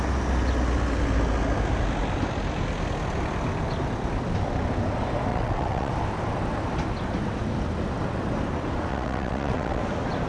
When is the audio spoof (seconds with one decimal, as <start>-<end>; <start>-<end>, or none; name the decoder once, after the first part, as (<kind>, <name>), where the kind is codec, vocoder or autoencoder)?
5.3-5.9 (vocoder, WaveNeXt); 8.9-9.8